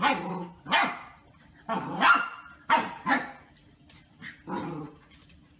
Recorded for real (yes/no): yes